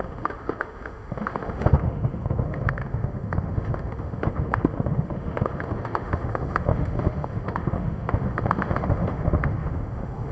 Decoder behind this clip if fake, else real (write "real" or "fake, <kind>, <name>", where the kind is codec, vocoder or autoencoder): fake, autoencoder, DAC-VAE